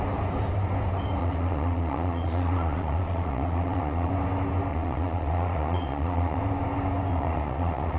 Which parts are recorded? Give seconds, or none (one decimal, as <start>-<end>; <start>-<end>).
0.0-1.2; 4.1-4.7; 6.4-7.1